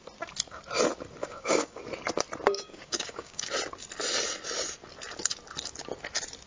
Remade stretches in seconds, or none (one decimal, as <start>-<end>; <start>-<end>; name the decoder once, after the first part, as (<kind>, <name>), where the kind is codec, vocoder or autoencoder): 1.2-1.8 (codec, DAC); 2.5-3.5